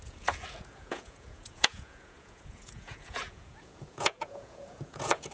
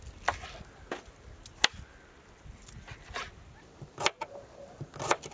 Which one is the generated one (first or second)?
first